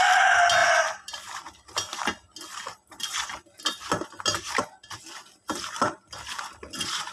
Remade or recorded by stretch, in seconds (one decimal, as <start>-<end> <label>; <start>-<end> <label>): 0.0-7.1 recorded